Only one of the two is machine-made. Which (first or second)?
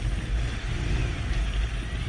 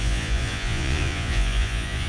second